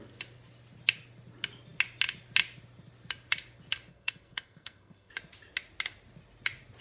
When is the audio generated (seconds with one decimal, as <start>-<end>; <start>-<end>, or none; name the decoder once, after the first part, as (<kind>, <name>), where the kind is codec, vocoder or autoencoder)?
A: 3.9-5.1 (codec, SNAC)